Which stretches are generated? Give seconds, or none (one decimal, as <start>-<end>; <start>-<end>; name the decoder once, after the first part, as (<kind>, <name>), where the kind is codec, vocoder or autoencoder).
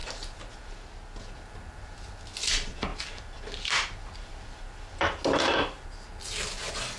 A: none